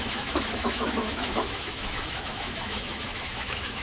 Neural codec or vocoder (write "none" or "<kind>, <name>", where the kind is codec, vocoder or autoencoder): autoencoder, DAC-VAE